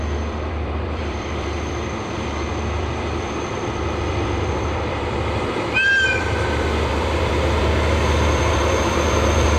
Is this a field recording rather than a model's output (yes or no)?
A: no